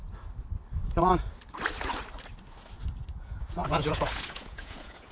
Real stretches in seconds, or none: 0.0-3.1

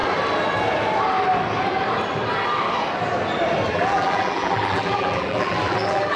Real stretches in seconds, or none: 0.0-3.7

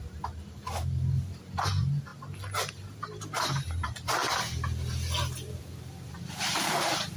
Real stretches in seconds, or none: 2.1-2.7; 4.2-5.6

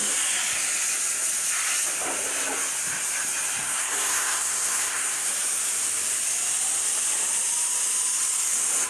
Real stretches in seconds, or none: 0.0-3.6; 5.3-8.9

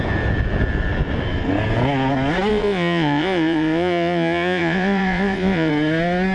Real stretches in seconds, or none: 0.0-2.5; 5.7-6.3

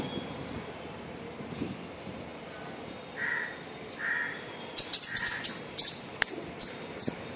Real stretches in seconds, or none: 0.0-7.4

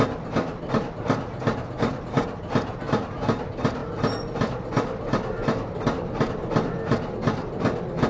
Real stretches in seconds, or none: 0.0-8.1